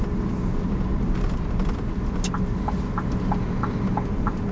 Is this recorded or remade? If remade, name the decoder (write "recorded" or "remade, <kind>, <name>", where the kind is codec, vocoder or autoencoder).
recorded